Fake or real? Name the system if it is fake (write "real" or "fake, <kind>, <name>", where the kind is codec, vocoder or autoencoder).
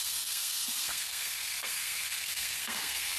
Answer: fake, codec, SNAC